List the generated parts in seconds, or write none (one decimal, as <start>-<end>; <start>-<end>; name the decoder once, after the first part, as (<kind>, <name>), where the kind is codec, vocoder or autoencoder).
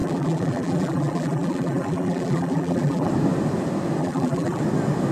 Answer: 0.0-3.1 (vocoder, BigVGAN v2); 4.0-4.6